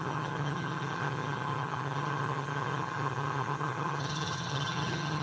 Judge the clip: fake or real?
fake